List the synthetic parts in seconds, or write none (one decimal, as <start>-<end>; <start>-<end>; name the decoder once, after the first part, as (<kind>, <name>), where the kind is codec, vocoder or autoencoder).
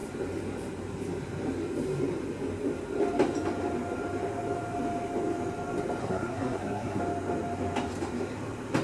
6.0-7.0 (codec, SNAC)